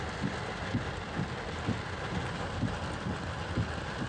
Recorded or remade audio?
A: recorded